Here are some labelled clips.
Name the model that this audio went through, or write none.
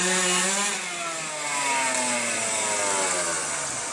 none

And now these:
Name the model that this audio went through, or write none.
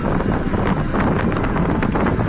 none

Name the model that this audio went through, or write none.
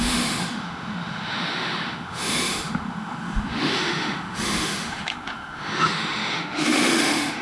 autoencoder, DAC-VAE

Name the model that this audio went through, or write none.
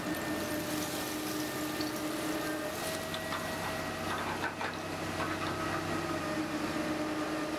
none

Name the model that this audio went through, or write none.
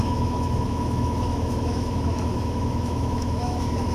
autoencoder, DAC-VAE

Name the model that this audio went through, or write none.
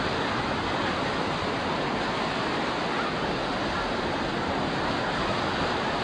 none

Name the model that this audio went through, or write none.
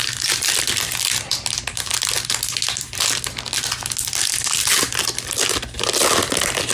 none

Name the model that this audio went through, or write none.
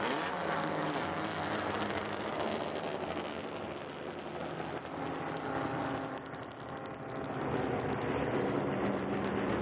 none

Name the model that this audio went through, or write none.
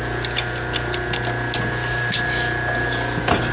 none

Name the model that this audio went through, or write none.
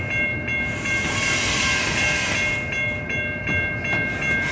none